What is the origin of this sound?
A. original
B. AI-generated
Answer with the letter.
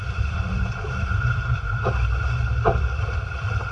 B